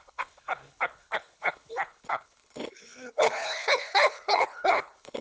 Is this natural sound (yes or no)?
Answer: no